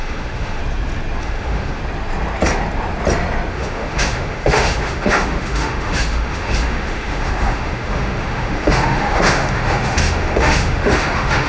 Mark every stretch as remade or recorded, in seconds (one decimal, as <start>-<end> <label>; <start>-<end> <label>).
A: 0.0-0.6 remade; 0.6-1.2 recorded; 1.2-1.8 remade; 1.8-3.5 recorded; 3.5-11.5 remade